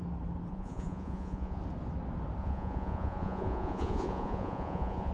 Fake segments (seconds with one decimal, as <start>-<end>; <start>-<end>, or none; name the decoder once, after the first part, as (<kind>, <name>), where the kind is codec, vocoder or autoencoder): 0.5-1.6 (vocoder, Vocos); 2.4-5.1